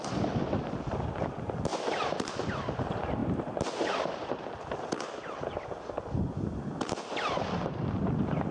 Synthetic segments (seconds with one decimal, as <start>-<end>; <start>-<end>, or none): none

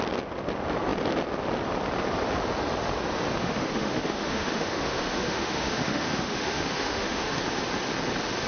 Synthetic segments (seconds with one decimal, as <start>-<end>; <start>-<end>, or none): 3.4-7.4